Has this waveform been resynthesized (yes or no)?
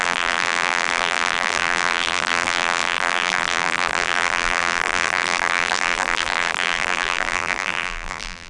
yes